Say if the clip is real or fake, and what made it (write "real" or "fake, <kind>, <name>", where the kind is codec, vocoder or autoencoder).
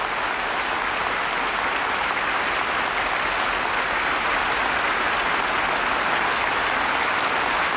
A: real